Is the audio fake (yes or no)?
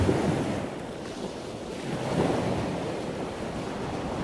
no